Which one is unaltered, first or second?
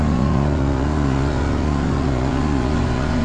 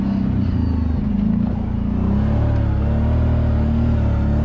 second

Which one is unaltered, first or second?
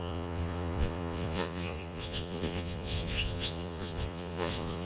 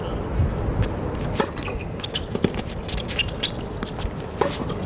second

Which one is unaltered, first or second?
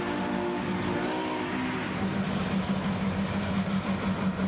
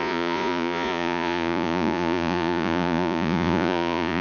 first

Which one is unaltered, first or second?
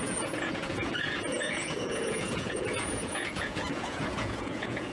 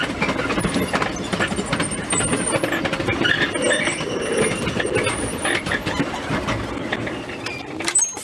second